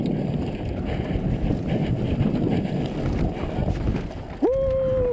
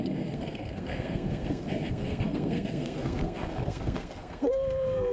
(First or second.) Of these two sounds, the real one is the first